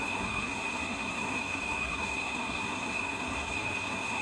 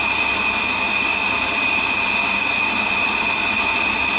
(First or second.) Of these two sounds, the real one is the second